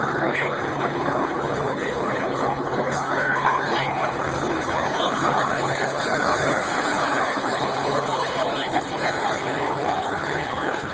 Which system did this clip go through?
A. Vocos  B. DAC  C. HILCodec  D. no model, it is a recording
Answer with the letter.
C